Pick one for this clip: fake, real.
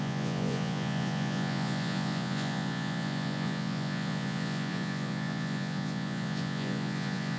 fake